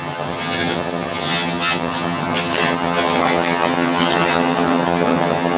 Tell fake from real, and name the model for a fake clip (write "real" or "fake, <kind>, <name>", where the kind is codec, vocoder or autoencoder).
fake, vocoder, HiFi-GAN